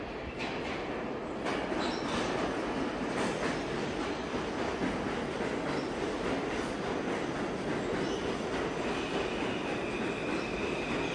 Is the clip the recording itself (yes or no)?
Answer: yes